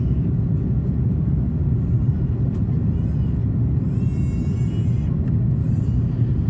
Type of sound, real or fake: real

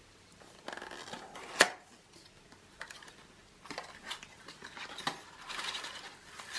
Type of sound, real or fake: real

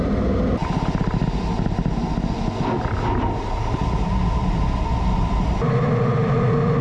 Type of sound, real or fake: real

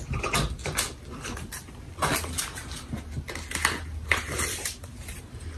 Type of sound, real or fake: real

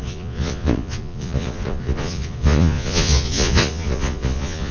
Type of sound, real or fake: fake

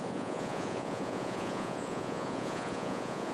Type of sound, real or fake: fake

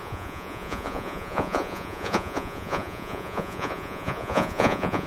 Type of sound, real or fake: fake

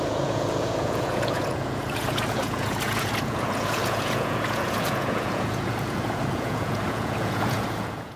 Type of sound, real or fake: fake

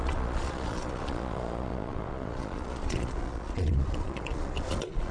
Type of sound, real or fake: fake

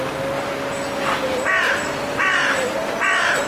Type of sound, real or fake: real